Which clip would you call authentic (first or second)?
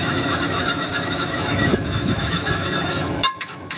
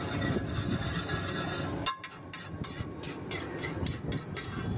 second